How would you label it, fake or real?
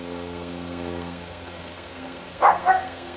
fake